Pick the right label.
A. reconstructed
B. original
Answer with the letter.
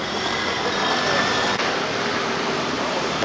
A